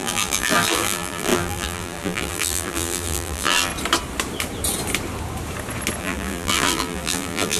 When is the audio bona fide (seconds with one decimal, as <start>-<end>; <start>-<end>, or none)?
3.7-6.0